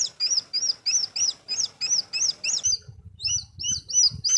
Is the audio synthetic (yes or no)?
no